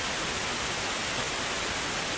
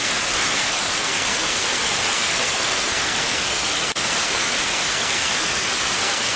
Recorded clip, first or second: first